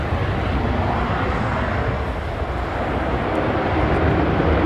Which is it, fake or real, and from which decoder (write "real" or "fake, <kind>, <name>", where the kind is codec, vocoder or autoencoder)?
real